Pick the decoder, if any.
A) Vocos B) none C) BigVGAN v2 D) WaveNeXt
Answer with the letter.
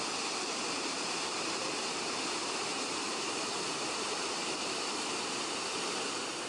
C